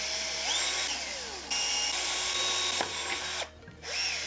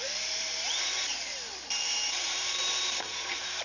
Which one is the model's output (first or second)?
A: second